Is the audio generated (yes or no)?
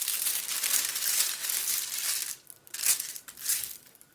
no